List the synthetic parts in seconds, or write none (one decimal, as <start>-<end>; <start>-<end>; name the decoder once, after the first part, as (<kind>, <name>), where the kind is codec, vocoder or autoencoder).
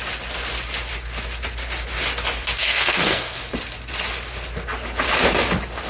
2.6-3.4 (codec, SNAC)